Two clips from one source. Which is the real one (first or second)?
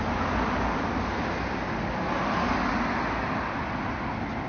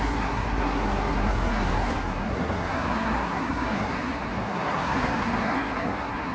first